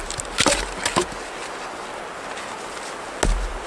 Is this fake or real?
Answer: real